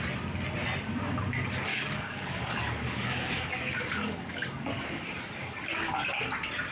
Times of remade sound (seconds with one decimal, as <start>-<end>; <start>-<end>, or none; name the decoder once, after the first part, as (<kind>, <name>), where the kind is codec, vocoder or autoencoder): 1.7-5.0 (codec, DAC); 5.4-6.1